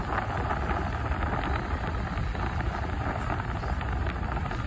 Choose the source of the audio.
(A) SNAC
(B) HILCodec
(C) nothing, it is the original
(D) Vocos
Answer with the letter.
C